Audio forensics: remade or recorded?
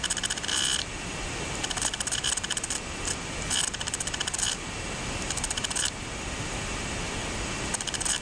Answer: recorded